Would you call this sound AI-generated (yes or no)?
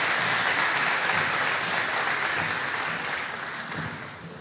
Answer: no